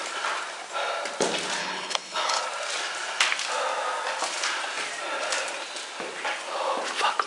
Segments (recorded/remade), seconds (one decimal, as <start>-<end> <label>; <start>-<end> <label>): 0.0-1.6 recorded; 1.6-2.4 remade; 2.4-7.3 recorded